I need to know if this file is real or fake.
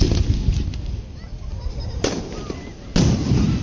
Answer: real